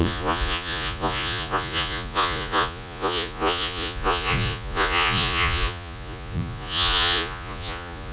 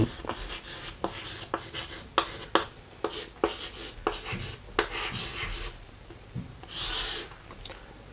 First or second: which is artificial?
first